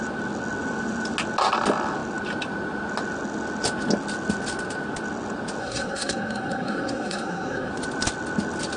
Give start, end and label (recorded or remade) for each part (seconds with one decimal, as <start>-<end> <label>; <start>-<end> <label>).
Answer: 0.0-5.6 recorded; 5.6-7.7 remade; 7.7-8.8 recorded